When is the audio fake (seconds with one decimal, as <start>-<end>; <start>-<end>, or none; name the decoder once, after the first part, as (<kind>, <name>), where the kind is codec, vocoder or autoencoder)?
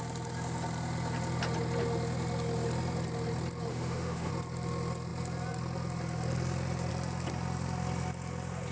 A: 3.7-4.3 (autoencoder, DAC-VAE)